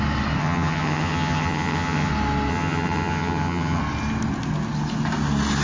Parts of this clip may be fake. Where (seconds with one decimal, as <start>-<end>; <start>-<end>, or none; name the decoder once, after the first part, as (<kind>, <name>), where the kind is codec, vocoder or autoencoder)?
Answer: 0.4-2.1 (vocoder, HiFi-GAN); 2.5-3.8